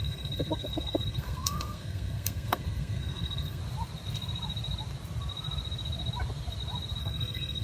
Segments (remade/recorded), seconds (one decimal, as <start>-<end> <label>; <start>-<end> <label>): 0.0-3.6 remade; 3.6-7.0 recorded; 7.0-7.6 remade